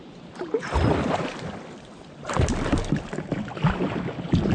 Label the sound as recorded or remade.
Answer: recorded